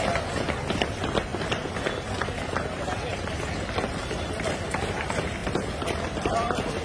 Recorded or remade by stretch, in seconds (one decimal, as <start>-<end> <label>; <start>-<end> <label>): 0.0-1.3 recorded; 1.3-2.0 remade; 2.0-3.1 recorded; 3.1-3.9 remade; 3.9-5.4 recorded; 5.4-6.3 remade; 6.3-6.8 recorded